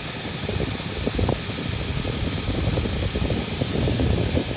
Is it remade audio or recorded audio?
recorded